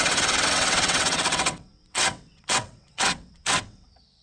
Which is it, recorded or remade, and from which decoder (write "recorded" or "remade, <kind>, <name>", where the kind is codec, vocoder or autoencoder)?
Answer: remade, vocoder, WaveNeXt